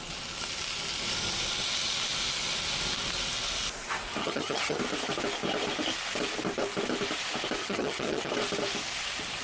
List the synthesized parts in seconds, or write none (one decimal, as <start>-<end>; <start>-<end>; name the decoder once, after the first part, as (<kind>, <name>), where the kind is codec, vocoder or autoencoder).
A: 4.2-4.8 (vocoder, HiFi-GAN); 7.6-8.3

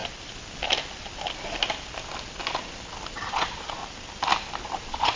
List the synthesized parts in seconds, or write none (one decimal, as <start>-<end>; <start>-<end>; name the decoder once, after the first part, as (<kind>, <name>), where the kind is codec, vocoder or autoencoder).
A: 3.1-3.8 (vocoder, Vocos); 4.8-5.2

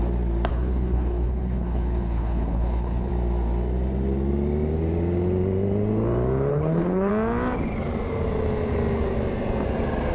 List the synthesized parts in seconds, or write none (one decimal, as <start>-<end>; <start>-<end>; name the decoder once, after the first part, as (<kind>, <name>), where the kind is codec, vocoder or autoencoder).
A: 0.5-3.1 (codec, HILCodec); 6.5-7.1

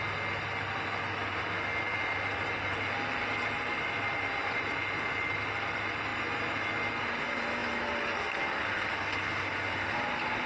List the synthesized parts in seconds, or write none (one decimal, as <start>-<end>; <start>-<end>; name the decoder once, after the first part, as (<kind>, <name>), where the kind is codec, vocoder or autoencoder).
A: none

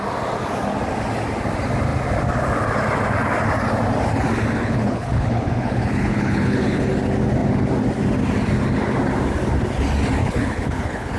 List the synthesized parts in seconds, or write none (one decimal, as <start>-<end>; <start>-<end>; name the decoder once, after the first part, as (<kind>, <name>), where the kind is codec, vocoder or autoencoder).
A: 4.6-6.9 (codec, HILCodec); 10.2-11.2

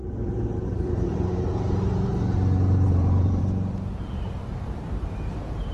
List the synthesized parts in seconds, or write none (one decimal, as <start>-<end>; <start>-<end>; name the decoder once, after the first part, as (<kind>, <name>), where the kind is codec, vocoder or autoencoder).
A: 0.0-5.7 (vocoder, BigVGAN v2)

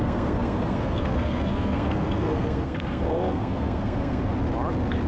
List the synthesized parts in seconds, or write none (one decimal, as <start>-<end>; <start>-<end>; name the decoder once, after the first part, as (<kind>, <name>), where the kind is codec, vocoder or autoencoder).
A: 0.0-4.3 (codec, SNAC)

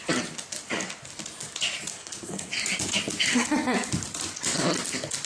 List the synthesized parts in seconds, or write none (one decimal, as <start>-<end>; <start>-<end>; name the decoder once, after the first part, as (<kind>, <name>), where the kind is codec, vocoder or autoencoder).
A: 1.9-2.5 (codec, SNAC)